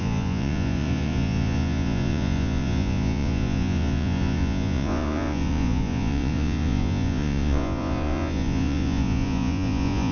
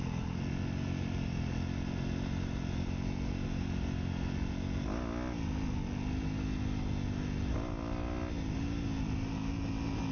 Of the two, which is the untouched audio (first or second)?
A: second